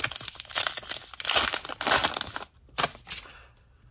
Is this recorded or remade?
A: remade